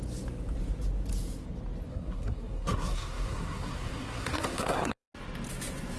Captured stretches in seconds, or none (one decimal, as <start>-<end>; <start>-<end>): 0.0-1.9; 5.1-6.0